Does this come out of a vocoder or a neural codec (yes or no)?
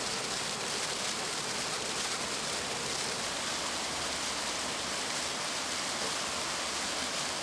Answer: no